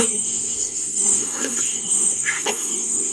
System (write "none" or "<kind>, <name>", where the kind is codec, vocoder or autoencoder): codec, SNAC